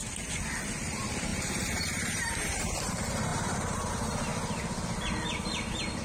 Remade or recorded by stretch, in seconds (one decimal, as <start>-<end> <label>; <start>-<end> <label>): 0.0-1.3 recorded; 1.3-2.9 remade; 2.9-3.3 recorded; 3.3-3.9 remade; 3.9-6.0 recorded